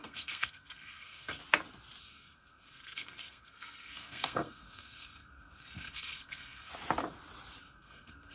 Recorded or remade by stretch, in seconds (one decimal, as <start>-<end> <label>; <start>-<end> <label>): 0.0-1.4 remade; 1.4-2.0 recorded; 2.0-6.7 remade; 6.7-7.6 recorded; 7.6-8.3 remade

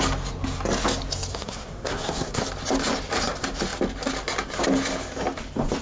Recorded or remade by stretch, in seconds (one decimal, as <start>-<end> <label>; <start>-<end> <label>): 0.0-1.3 recorded; 1.3-2.4 remade; 2.4-5.8 recorded